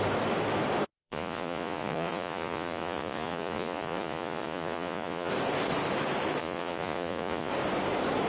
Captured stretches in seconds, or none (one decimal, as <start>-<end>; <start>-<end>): 0.0-1.0; 5.3-6.4; 7.5-8.3